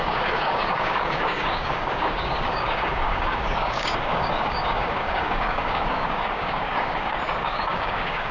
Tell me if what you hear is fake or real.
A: fake